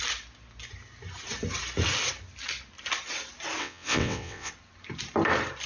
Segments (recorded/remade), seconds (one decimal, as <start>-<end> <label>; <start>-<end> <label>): 0.0-3.6 recorded; 3.6-4.5 remade; 4.5-5.7 recorded